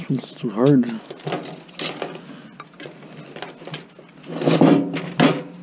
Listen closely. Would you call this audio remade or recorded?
recorded